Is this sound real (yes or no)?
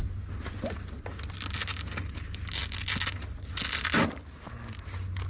yes